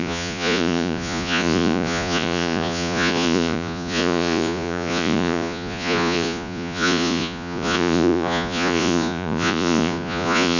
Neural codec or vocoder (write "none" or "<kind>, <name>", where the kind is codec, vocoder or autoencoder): vocoder, Vocos